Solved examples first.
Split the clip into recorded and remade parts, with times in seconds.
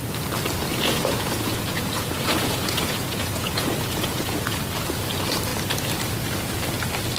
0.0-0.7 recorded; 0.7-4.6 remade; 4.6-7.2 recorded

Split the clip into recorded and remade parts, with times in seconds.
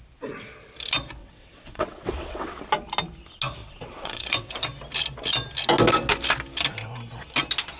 0.0-1.2 recorded; 1.2-2.6 remade; 2.6-3.6 recorded; 3.6-4.5 remade; 4.5-7.8 recorded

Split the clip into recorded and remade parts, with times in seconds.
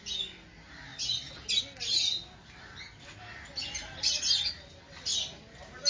0.0-5.9 recorded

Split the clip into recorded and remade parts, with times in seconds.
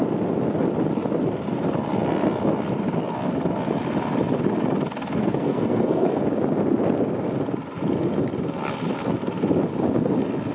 0.0-5.2 recorded; 5.2-6.2 remade; 6.2-10.5 recorded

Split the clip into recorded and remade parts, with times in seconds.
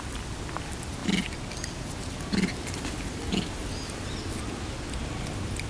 0.0-5.7 recorded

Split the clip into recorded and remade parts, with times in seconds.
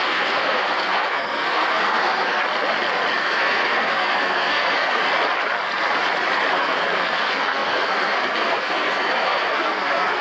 0.0-2.4 remade; 2.4-3.2 recorded; 3.2-5.0 remade; 5.0-6.5 recorded; 6.5-10.2 remade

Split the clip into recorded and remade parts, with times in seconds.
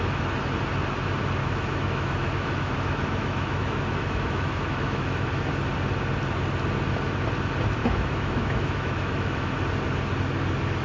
0.0-1.4 recorded; 1.4-5.5 remade; 5.5-7.8 recorded; 7.8-9.5 remade; 9.5-10.8 recorded